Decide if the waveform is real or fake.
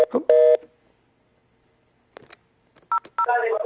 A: real